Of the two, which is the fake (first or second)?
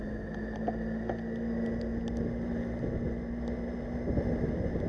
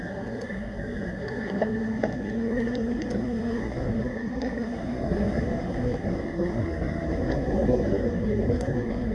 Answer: second